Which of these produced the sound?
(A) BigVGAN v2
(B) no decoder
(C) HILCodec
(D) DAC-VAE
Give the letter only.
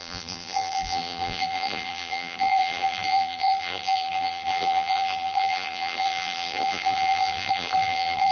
A